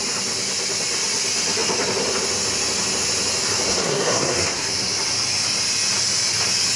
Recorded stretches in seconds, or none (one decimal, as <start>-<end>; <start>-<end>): 0.0-3.7; 4.7-6.8